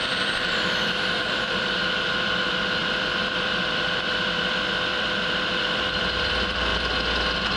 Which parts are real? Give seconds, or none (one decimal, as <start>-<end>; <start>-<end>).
6.7-7.6